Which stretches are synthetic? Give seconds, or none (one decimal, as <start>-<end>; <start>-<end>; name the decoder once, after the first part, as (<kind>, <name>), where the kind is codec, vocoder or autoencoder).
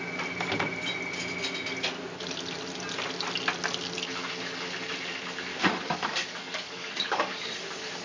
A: 5.5-7.5 (codec, DAC)